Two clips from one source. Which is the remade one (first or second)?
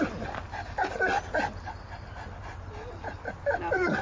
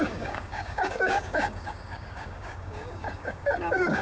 second